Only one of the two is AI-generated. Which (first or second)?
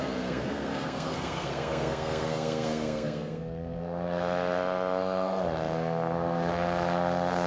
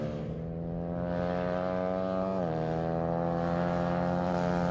first